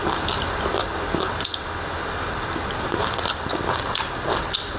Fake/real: real